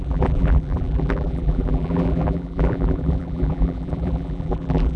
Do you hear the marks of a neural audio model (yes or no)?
yes